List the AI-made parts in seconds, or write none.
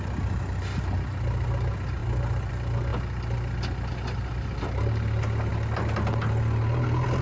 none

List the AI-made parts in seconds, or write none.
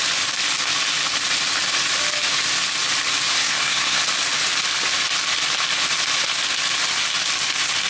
3.3-4.0 (codec, SNAC)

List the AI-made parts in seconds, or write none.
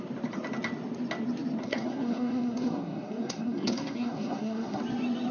1.6-4.8 (codec, SNAC)